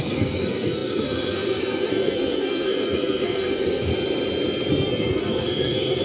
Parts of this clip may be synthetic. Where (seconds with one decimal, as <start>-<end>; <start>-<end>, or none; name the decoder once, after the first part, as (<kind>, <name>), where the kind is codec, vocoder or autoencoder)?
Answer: 0.0-3.9 (codec, SNAC); 4.7-6.0